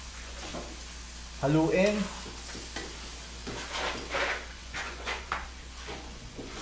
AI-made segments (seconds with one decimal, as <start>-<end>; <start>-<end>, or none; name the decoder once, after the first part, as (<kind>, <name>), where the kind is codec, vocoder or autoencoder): 0.0-0.5 (vocoder, Vocos); 4.5-6.6